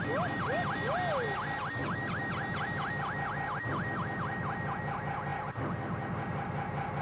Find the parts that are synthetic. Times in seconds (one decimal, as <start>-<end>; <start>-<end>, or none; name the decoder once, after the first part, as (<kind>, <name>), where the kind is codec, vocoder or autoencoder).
none